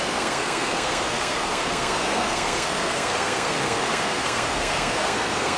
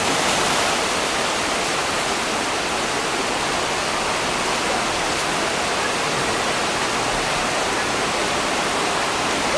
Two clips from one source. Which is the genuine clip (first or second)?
second